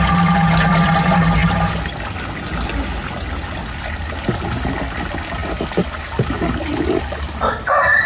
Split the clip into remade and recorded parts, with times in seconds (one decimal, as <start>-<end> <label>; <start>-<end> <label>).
0.0-8.1 recorded